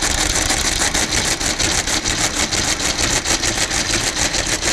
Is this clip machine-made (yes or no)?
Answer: no